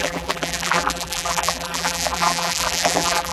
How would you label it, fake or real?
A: fake